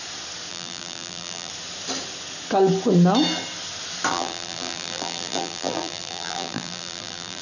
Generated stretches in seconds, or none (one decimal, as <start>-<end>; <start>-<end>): 0.5-1.5; 4.1-7.4